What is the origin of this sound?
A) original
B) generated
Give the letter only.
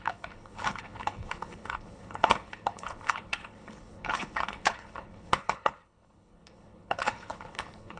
B